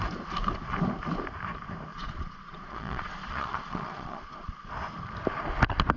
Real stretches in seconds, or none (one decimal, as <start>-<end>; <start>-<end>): 0.0-1.9; 4.6-6.0